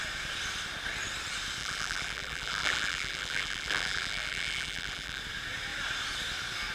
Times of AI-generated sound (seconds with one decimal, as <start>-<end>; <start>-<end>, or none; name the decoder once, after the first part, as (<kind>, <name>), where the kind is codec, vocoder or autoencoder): 1.6-5.2 (vocoder, BigVGAN v2)